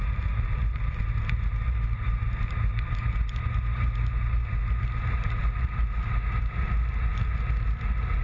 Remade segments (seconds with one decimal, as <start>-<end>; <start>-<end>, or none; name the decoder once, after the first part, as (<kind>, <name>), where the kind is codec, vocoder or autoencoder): 0.0-7.1 (vocoder, BigVGAN v2)